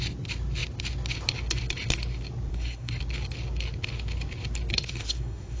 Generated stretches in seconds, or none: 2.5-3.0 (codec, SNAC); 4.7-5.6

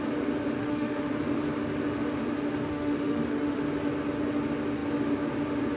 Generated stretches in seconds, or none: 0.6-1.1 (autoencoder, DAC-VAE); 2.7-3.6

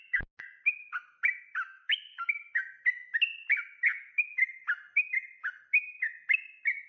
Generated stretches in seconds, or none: 1.7-2.5 (autoencoder, DAC-VAE)

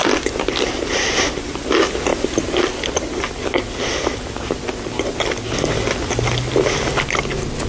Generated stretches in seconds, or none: none

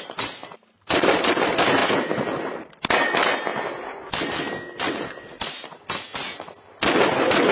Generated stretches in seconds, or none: none

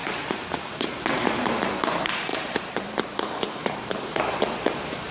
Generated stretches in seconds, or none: 0.0-5.1 (vocoder, BigVGAN v2)

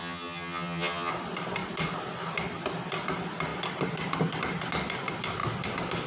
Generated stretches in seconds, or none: 0.0-1.1 (vocoder, HiFi-GAN)

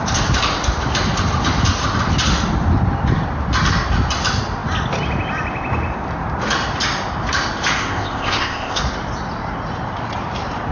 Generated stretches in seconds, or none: 7.8-8.8 (codec, ZipCodec)